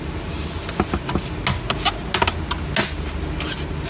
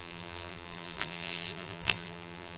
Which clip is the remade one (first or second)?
second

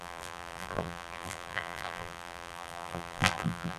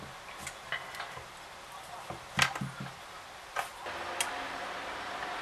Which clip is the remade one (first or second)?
first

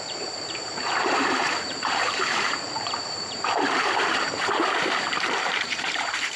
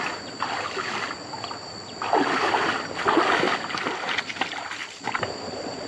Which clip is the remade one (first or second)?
first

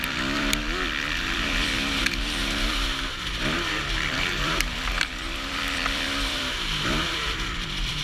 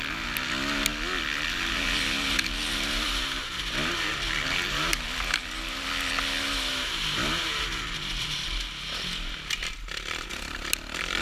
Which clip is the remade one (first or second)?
first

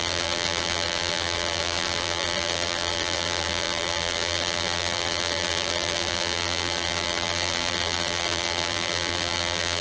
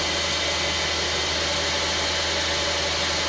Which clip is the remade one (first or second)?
first